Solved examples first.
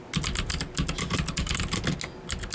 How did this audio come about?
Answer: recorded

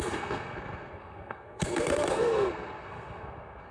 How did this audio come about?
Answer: remade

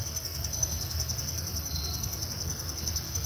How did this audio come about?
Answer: remade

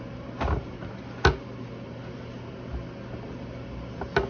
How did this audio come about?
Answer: recorded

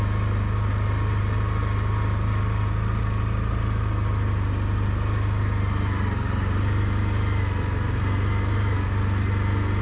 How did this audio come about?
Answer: recorded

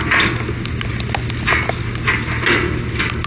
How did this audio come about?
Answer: recorded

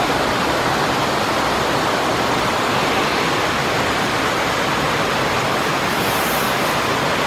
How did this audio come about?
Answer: recorded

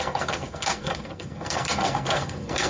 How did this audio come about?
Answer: remade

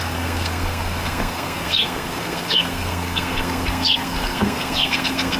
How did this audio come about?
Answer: remade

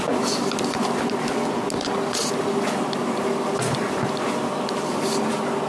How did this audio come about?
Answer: recorded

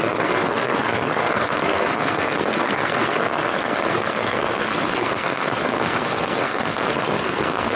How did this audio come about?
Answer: remade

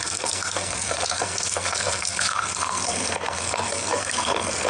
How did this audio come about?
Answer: remade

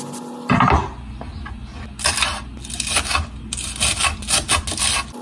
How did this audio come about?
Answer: recorded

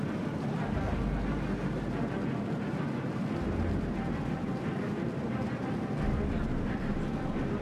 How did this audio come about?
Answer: recorded